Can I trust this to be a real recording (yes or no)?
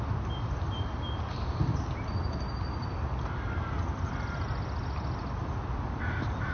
yes